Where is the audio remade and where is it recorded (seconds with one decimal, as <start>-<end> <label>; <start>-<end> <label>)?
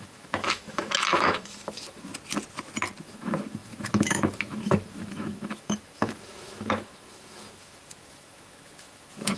0.0-2.1 remade; 2.1-3.0 recorded; 3.0-9.4 remade